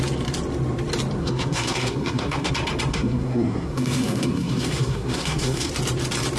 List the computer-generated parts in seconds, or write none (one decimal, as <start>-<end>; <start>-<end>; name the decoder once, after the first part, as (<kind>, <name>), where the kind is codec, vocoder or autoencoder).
1.2-2.5 (codec, SNAC); 2.9-5.7